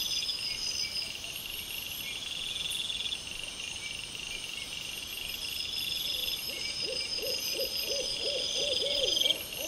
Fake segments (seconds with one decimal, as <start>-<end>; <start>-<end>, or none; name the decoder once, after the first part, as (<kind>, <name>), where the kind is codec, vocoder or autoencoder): 6.2-7.6 (vocoder, BigVGAN v2)